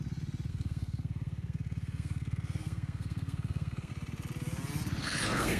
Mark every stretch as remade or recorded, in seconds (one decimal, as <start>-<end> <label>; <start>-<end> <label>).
0.0-0.5 recorded; 0.5-3.9 remade; 3.9-5.0 recorded; 5.0-5.6 remade